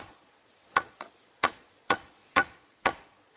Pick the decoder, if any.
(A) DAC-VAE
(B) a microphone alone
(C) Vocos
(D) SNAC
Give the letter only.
C